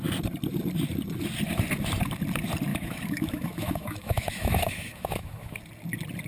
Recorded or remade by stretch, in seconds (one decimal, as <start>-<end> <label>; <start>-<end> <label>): 0.0-2.7 recorded; 2.7-5.6 remade; 5.6-6.3 recorded